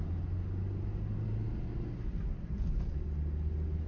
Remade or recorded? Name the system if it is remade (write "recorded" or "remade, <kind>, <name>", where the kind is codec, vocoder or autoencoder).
recorded